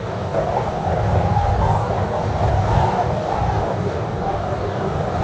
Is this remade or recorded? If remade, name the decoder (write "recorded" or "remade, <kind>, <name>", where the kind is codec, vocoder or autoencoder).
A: remade, codec, DAC